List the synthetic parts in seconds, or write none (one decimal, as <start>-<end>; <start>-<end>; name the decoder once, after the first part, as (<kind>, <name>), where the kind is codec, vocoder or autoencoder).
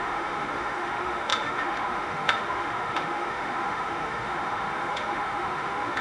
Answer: 0.0-6.0 (autoencoder, DAC-VAE)